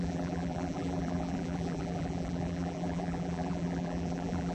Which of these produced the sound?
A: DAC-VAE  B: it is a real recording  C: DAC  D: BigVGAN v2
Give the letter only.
D